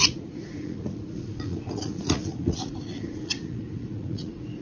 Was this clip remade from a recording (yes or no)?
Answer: yes